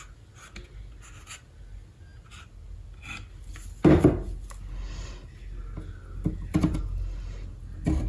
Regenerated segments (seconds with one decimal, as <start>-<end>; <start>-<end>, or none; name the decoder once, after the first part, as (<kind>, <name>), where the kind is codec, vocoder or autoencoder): none